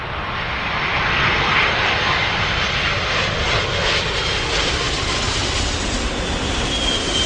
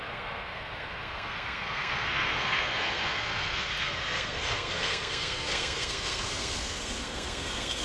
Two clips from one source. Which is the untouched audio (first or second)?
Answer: first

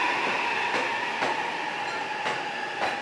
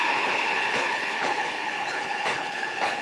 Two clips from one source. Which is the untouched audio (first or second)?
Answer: first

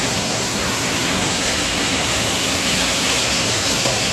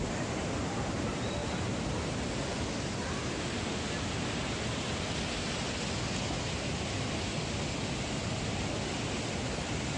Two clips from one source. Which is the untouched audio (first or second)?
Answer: second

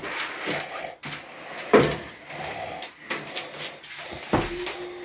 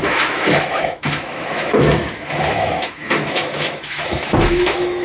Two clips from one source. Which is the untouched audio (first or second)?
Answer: first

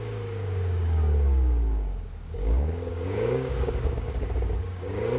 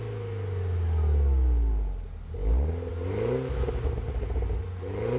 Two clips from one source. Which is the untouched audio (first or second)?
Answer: second